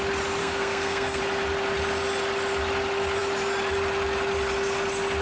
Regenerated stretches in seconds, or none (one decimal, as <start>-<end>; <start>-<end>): 0.4-1.2